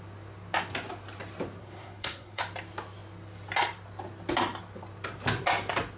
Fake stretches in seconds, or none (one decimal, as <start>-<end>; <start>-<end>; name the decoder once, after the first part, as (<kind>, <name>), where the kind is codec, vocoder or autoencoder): 1.6-2.4 (codec, SNAC)

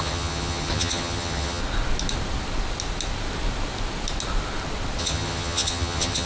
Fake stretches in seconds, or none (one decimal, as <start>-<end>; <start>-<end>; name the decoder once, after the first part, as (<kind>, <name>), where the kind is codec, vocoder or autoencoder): 0.0-1.6 (vocoder, HiFi-GAN); 5.0-6.3

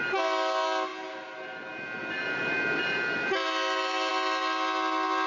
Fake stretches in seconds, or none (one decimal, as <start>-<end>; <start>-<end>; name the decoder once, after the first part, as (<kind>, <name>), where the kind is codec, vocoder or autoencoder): none

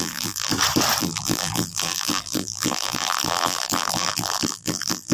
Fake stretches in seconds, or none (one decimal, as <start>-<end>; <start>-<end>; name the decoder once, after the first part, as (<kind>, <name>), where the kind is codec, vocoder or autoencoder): 0.0-0.5 (vocoder, BigVGAN v2); 1.0-5.1

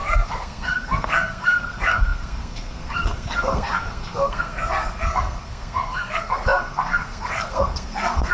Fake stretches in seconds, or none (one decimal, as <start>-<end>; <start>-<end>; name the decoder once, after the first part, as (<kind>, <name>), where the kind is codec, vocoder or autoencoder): 0.0-8.3 (codec, SNAC)